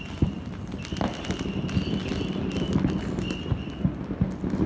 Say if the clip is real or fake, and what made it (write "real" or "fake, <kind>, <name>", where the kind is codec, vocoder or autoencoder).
fake, vocoder, BigVGAN v2